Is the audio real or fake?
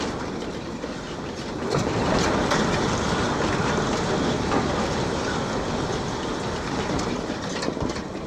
real